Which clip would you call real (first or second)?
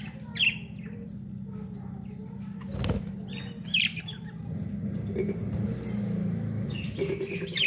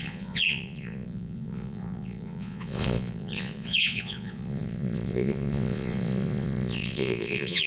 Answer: first